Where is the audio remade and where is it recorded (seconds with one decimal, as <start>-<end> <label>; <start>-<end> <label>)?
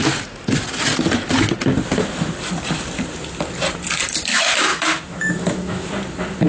0.0-4.3 recorded; 4.3-5.9 remade; 5.9-6.5 recorded